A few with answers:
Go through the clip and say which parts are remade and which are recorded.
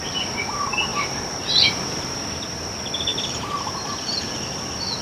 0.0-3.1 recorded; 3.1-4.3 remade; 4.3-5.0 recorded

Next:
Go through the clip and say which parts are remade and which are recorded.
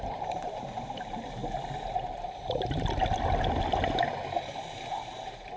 0.0-1.4 remade; 1.4-4.7 recorded; 4.7-5.6 remade